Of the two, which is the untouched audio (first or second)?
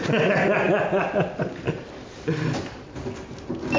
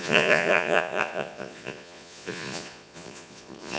first